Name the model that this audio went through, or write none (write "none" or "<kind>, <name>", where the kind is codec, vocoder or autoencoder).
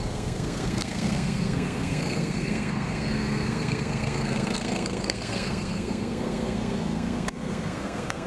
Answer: codec, SNAC